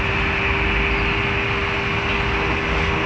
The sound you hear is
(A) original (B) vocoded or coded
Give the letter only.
A